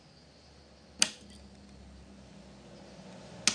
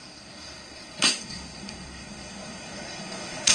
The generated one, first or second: second